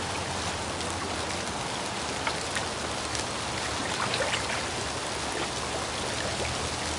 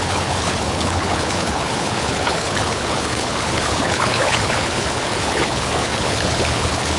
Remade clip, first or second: second